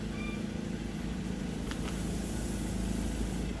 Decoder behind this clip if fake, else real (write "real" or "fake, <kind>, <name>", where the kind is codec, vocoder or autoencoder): real